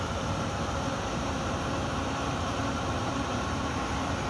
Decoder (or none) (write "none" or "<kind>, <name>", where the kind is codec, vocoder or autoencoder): vocoder, BigVGAN v2